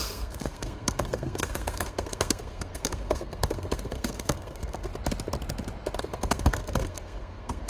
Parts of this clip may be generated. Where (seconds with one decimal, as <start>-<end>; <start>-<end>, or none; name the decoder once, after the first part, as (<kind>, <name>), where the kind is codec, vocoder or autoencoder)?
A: 0.0-4.9 (codec, SNAC); 6.0-7.7